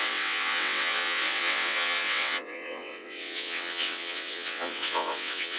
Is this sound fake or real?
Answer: fake